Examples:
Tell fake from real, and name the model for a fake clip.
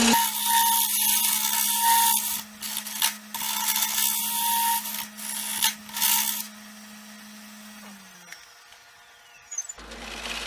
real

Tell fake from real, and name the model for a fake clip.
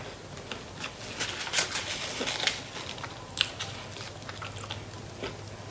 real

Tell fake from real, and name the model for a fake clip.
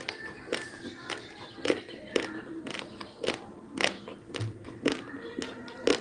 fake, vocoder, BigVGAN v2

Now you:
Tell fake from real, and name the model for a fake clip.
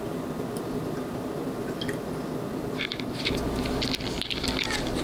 real